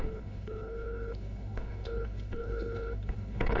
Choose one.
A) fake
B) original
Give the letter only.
A